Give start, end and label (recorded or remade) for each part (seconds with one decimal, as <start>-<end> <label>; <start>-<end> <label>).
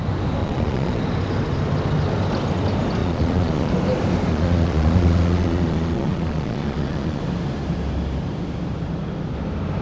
0.0-0.4 recorded; 0.4-1.0 remade; 1.0-3.0 recorded; 3.0-3.7 remade; 3.7-4.3 recorded; 4.3-7.2 remade; 7.2-9.8 recorded